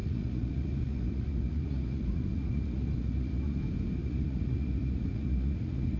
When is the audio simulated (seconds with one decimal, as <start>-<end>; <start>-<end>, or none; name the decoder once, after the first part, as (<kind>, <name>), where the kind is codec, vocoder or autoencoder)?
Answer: 0.0-3.6 (vocoder, Vocos); 4.0-6.0